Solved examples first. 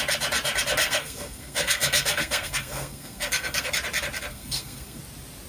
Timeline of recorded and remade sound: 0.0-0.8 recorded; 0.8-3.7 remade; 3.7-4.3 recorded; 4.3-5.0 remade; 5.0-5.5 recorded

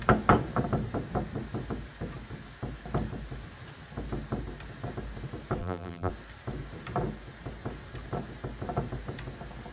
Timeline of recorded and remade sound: 0.0-5.6 recorded; 5.6-6.1 remade; 6.1-9.7 recorded

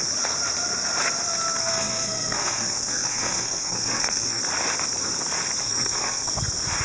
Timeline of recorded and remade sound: 0.0-1.6 recorded; 1.6-4.4 remade; 4.4-5.6 recorded; 5.6-6.3 remade; 6.3-6.8 recorded

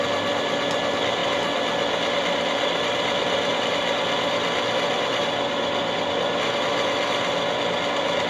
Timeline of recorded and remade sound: 0.0-8.3 recorded